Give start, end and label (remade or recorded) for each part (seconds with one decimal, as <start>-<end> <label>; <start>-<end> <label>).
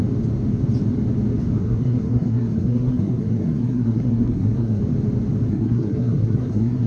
0.0-1.6 recorded; 1.6-4.8 remade; 4.8-5.5 recorded; 5.5-6.9 remade